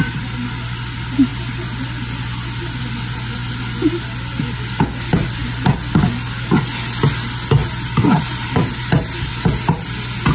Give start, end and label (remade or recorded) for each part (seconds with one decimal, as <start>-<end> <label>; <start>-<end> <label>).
0.0-7.6 recorded; 7.6-9.3 remade; 9.3-10.3 recorded